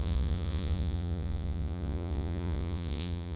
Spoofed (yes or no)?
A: yes